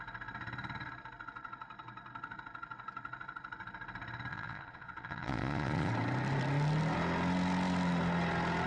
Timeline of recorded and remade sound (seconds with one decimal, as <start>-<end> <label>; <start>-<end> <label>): 0.0-4.3 recorded; 4.3-5.9 remade; 5.9-8.7 recorded